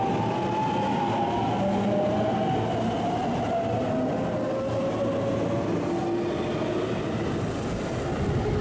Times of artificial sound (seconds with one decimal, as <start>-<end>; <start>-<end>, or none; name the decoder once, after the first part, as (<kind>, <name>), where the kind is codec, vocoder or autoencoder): none